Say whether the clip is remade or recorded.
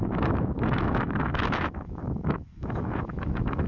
remade